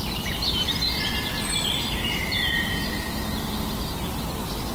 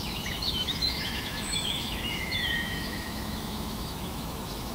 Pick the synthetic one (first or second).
second